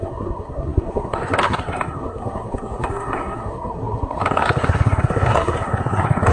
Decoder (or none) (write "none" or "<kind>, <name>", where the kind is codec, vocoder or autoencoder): codec, SNAC